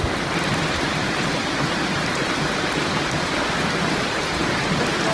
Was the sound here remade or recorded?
recorded